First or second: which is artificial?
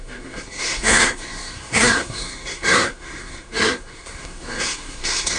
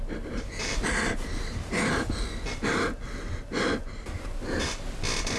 first